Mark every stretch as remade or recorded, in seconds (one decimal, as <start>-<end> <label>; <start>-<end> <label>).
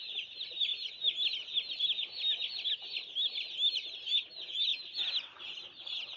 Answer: 0.0-6.2 recorded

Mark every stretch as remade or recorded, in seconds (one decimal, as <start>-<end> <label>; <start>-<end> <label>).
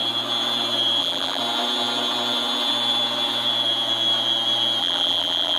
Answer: 0.0-1.0 recorded; 1.0-1.4 remade; 1.4-4.8 recorded; 4.8-5.6 remade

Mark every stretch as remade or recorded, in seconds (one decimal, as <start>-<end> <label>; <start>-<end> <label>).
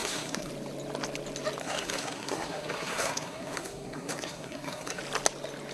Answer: 0.0-0.5 remade; 0.5-1.6 recorded; 1.6-5.0 remade; 5.0-5.7 recorded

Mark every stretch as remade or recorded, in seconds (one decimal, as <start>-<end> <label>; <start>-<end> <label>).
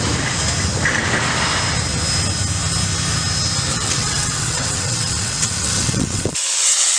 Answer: 0.0-3.7 recorded; 3.7-7.0 remade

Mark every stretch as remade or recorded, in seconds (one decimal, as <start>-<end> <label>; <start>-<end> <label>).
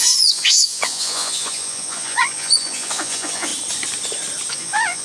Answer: 0.0-3.5 remade; 3.5-4.5 recorded; 4.5-5.0 remade